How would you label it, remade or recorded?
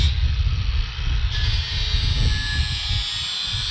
recorded